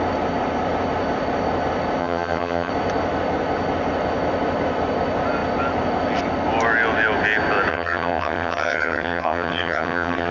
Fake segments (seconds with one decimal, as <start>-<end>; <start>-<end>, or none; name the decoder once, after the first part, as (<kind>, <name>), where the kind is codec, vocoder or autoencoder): 2.0-2.7 (vocoder, HiFi-GAN); 7.7-10.3